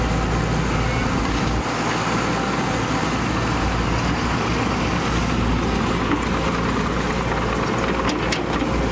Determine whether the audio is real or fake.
real